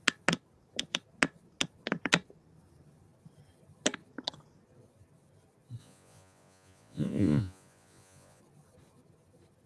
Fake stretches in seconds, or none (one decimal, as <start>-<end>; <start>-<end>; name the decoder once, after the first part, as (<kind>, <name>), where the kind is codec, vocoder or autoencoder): 5.8-8.4 (vocoder, Vocos)